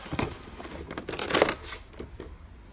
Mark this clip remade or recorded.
recorded